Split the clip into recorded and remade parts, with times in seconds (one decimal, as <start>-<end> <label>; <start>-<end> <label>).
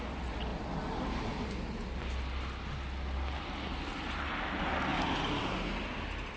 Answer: 0.0-6.4 recorded